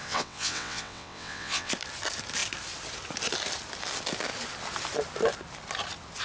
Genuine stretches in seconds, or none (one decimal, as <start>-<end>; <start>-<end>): 1.7-6.2